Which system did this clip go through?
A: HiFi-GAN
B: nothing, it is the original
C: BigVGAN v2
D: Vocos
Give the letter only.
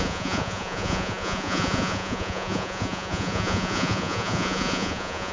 D